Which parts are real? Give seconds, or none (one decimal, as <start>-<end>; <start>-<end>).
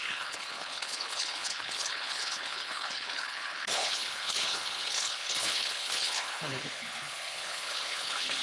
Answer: none